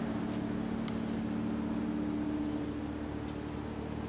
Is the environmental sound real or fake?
real